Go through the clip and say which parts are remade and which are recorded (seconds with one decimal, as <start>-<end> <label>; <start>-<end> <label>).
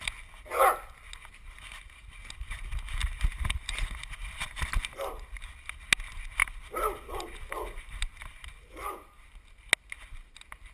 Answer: 0.0-3.0 recorded; 3.0-3.7 remade; 3.7-4.2 recorded; 4.2-5.1 remade; 5.1-6.4 recorded; 6.4-9.4 remade; 9.4-10.7 recorded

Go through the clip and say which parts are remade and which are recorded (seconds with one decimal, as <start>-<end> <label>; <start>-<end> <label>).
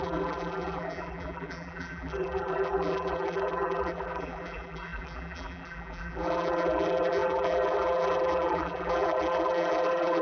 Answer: 0.0-10.2 remade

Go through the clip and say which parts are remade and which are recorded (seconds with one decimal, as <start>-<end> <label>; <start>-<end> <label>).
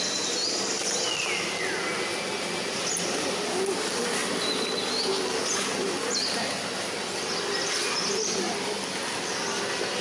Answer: 0.0-10.0 recorded